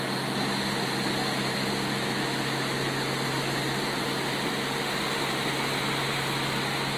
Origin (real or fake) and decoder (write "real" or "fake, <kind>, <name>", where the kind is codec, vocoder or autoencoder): real